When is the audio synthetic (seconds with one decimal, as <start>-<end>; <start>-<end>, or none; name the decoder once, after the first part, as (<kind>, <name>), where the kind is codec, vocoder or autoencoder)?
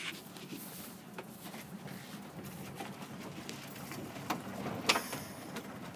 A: none